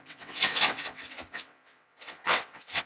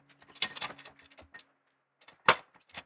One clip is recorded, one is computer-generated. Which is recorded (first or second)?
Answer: second